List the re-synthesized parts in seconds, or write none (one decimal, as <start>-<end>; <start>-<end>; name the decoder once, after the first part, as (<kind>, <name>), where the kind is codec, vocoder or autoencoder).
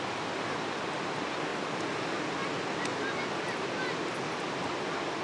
none